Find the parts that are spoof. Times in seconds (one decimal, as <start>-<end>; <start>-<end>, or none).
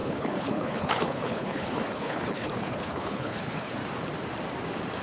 0.0-3.8